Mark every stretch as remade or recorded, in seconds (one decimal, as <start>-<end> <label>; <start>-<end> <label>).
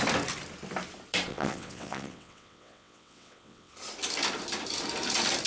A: 0.0-1.3 recorded; 1.3-3.7 remade; 3.7-5.5 recorded